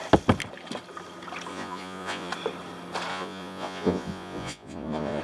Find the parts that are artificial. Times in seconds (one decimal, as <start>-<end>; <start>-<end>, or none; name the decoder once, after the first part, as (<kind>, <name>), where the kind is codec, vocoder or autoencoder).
1.5-2.3 (vocoder, Vocos); 3.1-5.2